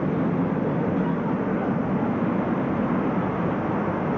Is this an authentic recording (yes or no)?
yes